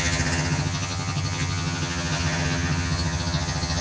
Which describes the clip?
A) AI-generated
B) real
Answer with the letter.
A